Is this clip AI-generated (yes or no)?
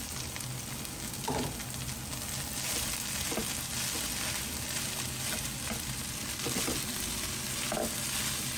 no